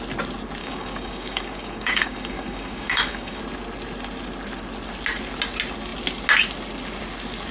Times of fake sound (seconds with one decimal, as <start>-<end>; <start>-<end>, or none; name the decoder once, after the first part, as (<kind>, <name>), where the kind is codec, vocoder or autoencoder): 0.6-3.4 (codec, DAC)